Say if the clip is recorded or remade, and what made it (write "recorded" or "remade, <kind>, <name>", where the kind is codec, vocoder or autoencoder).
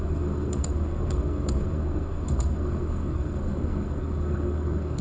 remade, codec, SNAC